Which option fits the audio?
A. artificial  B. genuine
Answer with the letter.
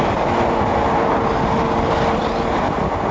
B